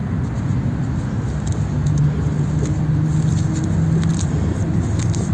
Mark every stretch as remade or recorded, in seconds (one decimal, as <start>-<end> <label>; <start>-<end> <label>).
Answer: 0.0-4.1 recorded; 4.1-5.3 remade